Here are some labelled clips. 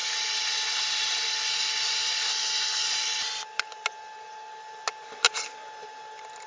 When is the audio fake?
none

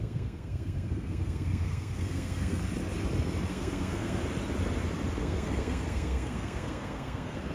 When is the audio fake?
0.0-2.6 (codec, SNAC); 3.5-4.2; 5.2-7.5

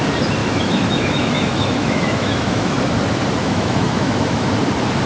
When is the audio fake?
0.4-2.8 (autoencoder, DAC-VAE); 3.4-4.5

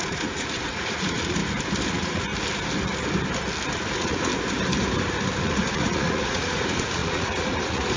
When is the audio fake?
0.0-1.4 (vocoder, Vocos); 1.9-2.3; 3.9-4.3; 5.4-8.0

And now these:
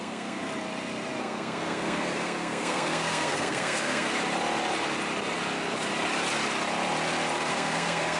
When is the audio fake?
0.0-0.4 (codec, SNAC); 1.2-4.1; 7.5-8.2